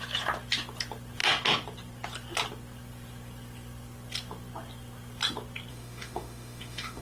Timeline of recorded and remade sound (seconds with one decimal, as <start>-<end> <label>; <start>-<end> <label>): 0.0-5.7 recorded; 5.7-7.0 remade